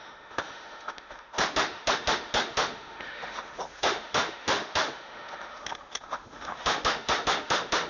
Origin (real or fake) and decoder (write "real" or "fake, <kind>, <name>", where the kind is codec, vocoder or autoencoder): fake, autoencoder, DAC-VAE